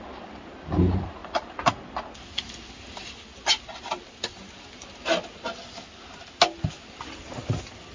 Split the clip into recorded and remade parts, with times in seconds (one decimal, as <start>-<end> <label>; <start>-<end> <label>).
0.0-1.2 recorded; 1.2-5.9 remade; 5.9-7.9 recorded